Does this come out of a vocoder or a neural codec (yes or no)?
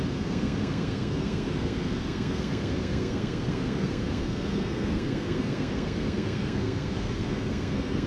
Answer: yes